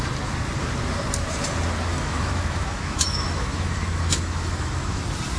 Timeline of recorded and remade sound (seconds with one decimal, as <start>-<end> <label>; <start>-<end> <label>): 0.0-1.9 recorded; 1.9-5.0 remade; 5.0-5.4 recorded